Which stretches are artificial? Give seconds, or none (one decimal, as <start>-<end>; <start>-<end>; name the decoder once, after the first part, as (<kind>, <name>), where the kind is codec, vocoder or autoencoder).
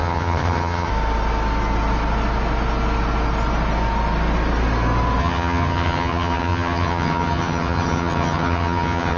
0.0-0.9 (vocoder, HiFi-GAN); 5.2-9.2